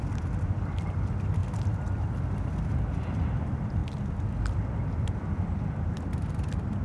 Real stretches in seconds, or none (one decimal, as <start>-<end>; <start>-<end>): 1.4-3.0; 3.8-4.4